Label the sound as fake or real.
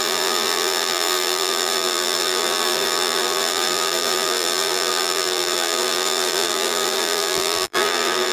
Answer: fake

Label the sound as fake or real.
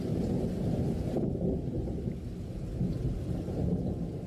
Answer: real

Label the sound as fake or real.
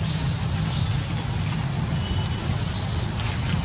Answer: real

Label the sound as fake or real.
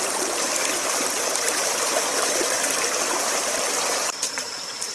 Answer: fake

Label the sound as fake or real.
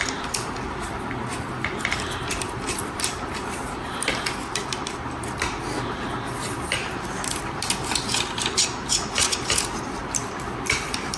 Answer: fake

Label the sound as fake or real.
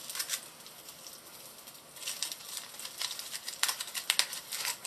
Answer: real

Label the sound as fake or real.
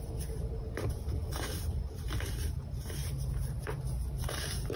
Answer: fake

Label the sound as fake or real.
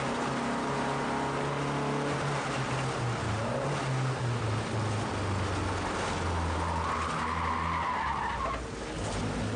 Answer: real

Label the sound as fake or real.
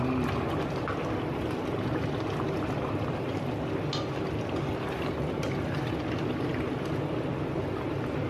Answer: real